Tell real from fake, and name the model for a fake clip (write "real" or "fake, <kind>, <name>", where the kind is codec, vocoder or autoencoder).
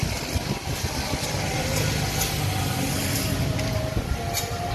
real